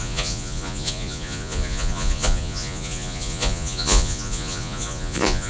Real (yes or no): no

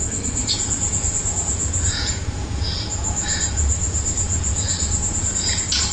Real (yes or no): no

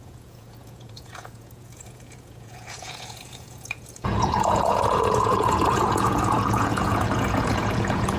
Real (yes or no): no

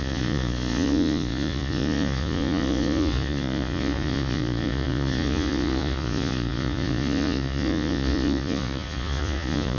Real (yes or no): no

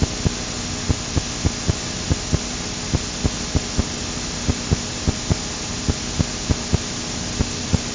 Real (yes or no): yes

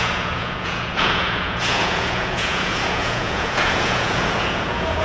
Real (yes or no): no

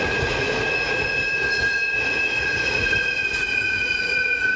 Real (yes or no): no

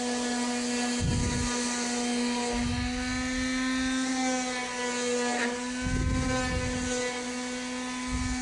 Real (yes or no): yes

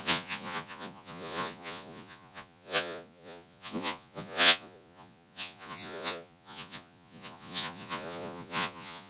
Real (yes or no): no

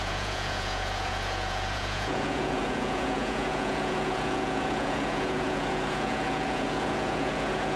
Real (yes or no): no